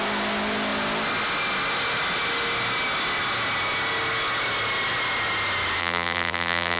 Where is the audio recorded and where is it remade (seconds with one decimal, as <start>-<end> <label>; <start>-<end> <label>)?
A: 0.0-5.8 recorded; 5.8-6.8 remade